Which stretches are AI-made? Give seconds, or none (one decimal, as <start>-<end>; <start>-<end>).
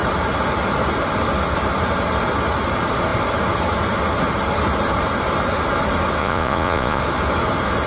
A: 6.2-7.0